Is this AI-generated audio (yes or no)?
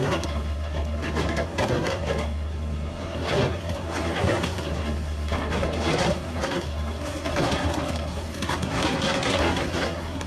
yes